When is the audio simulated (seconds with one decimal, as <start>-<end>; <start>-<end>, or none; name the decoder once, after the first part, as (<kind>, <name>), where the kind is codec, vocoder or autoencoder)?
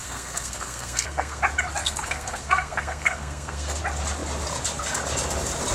0.0-1.4 (codec, SNAC); 1.8-3.8